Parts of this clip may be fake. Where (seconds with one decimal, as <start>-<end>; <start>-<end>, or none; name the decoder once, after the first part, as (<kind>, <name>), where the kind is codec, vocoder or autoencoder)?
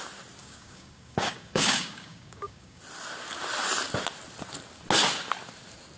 0.4-2.8 (codec, DAC)